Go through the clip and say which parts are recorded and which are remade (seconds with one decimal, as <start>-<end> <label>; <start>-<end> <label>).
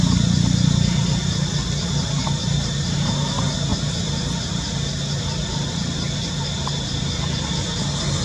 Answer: 0.0-8.2 recorded